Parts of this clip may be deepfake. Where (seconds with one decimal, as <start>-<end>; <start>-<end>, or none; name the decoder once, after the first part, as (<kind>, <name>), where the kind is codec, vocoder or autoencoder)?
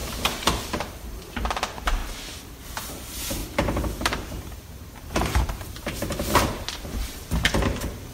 0.8-2.0 (vocoder, BigVGAN v2); 2.9-3.4; 4.0-8.1